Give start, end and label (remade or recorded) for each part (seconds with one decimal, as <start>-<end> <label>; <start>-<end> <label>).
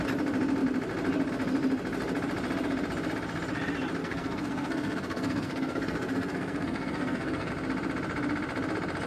0.0-4.0 recorded; 4.0-7.5 remade; 7.5-9.1 recorded